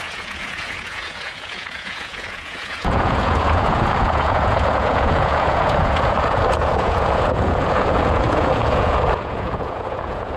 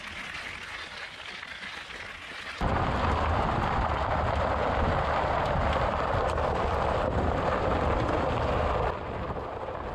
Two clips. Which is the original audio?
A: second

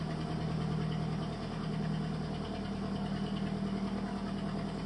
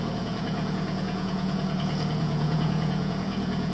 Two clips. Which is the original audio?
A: first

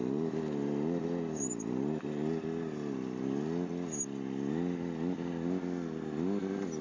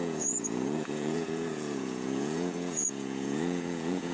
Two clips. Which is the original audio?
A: first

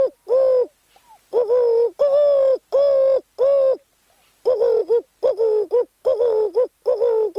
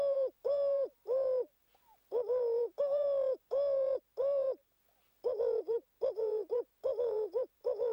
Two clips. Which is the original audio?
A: first